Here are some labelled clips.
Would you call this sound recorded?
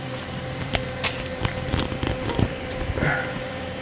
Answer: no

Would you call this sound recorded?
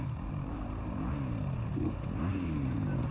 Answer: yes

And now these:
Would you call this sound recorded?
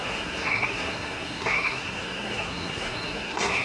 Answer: no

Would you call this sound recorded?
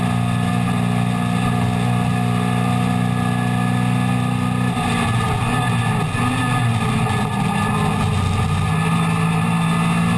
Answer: yes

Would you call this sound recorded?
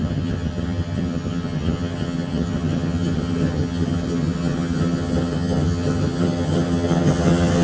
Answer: no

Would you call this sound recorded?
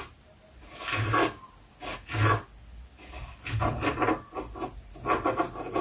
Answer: yes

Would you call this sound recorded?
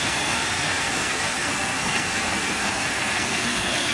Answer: no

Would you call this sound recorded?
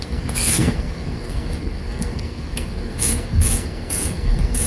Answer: no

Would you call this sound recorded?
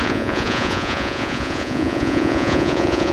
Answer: no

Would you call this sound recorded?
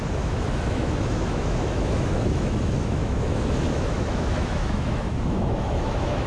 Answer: no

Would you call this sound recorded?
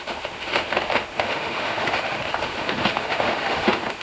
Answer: no